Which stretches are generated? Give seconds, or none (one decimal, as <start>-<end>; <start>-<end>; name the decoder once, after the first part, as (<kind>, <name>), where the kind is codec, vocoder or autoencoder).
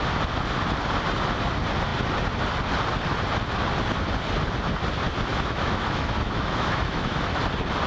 5.3-7.4 (autoencoder, DAC-VAE)